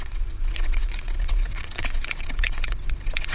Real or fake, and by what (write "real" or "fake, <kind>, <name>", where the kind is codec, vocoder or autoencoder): fake, vocoder, WaveNeXt